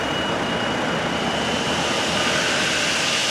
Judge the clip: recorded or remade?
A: recorded